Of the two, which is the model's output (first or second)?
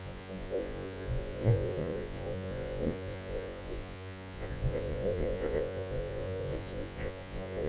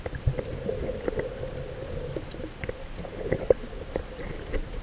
first